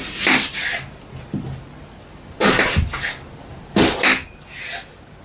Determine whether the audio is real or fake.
real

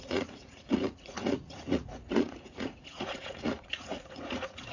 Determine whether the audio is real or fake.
fake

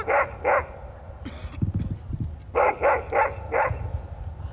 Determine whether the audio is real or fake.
real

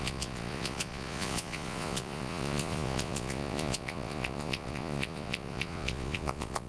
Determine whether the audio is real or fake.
fake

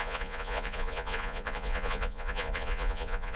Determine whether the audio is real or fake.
fake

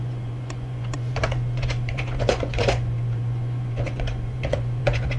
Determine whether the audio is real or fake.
fake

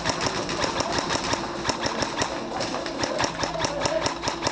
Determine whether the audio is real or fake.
real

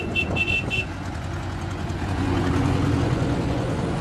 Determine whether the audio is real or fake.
fake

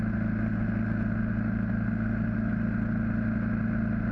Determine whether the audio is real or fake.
real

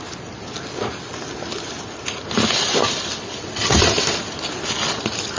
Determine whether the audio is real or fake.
real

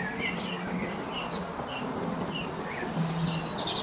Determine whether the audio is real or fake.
real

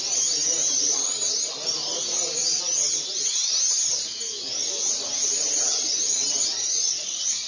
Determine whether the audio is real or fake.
real